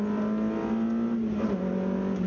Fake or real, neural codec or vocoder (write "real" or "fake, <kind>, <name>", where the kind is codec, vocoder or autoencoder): real